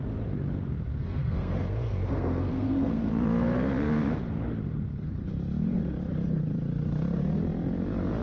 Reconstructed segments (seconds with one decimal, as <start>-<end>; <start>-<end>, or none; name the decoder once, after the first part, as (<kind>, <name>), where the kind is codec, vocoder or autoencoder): 0.9-3.1 (codec, SNAC)